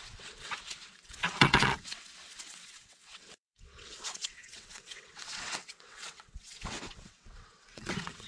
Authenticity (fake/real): fake